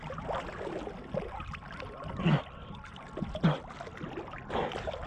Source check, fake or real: real